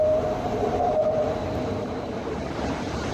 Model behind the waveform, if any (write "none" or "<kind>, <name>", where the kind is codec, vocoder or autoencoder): vocoder, BigVGAN v2